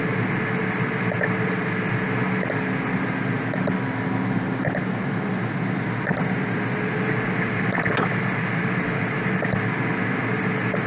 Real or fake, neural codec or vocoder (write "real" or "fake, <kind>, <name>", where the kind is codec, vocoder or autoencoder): real